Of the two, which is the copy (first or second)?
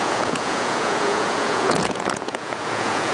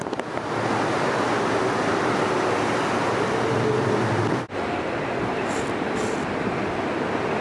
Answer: first